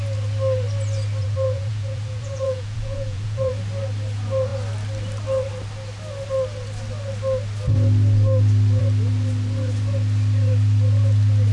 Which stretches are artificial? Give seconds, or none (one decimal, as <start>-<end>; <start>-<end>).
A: 1.2-3.5